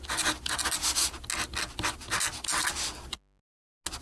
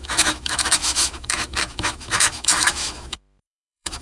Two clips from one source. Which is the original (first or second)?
first